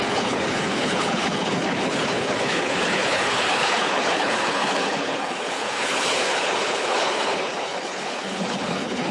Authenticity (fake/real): fake